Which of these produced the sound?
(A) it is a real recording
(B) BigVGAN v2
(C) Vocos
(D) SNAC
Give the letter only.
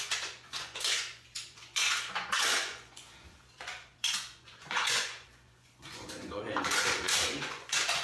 C